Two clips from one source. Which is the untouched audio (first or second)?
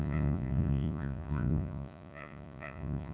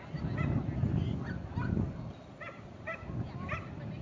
second